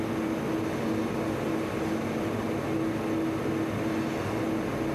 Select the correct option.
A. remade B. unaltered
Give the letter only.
B